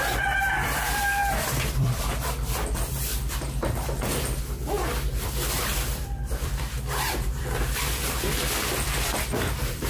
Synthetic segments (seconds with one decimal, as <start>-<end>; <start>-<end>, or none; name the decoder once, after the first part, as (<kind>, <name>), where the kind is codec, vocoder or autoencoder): 0.0-9.9 (vocoder, BigVGAN v2)